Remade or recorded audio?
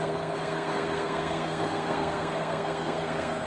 remade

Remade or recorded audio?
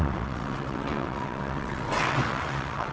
remade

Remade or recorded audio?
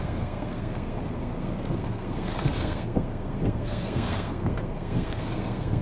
remade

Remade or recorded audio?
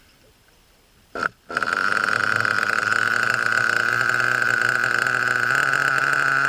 recorded